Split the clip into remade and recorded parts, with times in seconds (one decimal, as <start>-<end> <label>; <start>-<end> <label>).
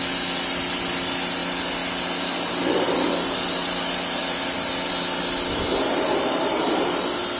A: 0.0-7.4 recorded